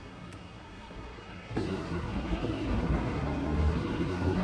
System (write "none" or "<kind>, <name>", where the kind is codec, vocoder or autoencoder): codec, SNAC